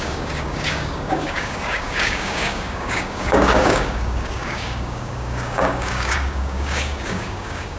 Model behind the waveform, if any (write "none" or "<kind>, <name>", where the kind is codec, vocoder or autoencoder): codec, DAC